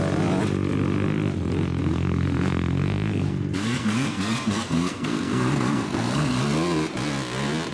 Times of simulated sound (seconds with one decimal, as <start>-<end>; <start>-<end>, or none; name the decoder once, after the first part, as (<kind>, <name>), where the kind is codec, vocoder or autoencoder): 1.8-6.4 (codec, SNAC)